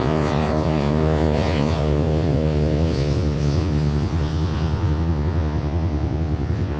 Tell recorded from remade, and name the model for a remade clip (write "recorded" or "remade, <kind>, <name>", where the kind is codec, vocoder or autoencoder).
remade, vocoder, Vocos